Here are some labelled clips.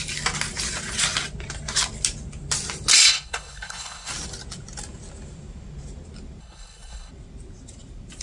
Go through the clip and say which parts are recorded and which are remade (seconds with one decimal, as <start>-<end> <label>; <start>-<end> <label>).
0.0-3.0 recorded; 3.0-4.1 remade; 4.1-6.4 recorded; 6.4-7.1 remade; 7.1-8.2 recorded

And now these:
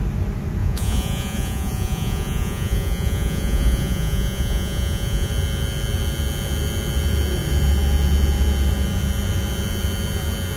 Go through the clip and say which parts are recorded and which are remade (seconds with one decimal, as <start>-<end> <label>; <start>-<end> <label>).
0.0-0.6 recorded; 0.6-5.3 remade; 5.3-10.6 recorded

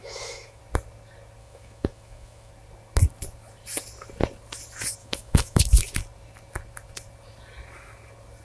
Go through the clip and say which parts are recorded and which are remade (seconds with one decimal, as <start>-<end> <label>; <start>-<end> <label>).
0.0-0.6 remade; 0.6-1.4 recorded; 1.4-2.5 remade; 2.5-5.0 recorded; 5.0-5.6 remade; 5.6-8.4 recorded

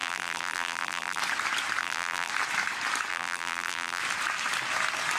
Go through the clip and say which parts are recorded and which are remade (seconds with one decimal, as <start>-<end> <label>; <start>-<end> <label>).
0.0-1.2 remade; 1.2-1.8 recorded; 1.8-2.3 remade; 2.3-3.1 recorded; 3.1-4.0 remade; 4.0-5.2 recorded

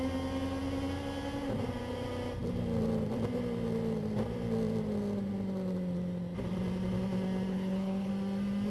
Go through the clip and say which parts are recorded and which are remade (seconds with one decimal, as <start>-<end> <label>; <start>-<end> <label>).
0.0-7.5 recorded; 7.5-8.1 remade; 8.1-8.7 recorded